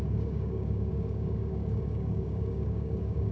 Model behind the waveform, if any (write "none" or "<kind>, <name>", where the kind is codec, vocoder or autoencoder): codec, DAC